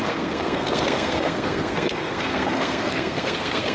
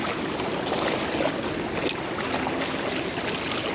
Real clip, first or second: second